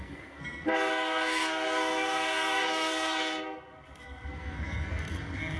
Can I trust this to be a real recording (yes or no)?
no